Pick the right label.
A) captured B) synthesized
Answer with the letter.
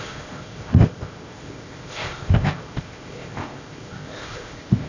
B